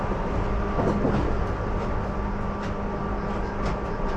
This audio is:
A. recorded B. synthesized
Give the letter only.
A